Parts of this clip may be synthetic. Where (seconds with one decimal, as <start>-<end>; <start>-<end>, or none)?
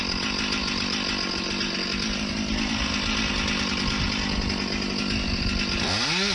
none